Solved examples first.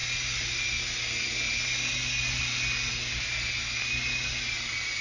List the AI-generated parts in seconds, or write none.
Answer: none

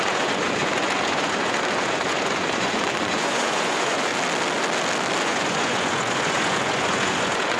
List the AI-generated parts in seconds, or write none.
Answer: 0.0-4.1 (vocoder, Vocos); 5.2-7.6

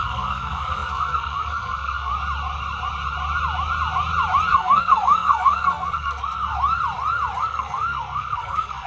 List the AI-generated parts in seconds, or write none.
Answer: 0.0-2.1 (codec, SNAC); 4.5-6.5; 7.4-8.9

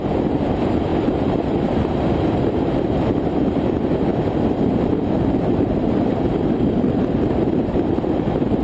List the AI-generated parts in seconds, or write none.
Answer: none